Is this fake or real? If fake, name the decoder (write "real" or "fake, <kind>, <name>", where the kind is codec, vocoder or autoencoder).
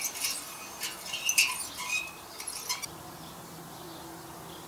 real